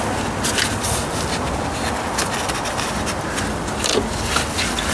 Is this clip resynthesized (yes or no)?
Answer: no